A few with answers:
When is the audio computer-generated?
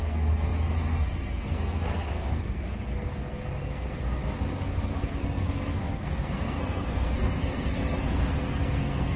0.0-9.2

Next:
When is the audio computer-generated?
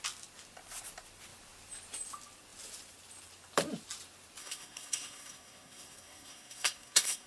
4.4-7.3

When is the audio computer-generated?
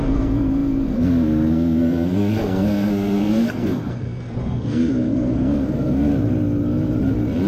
0.0-6.1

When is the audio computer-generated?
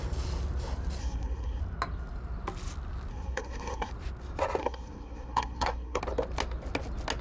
1.0-1.6; 3.1-3.9; 4.6-6.0